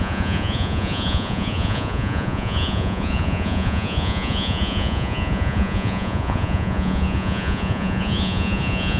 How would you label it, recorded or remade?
remade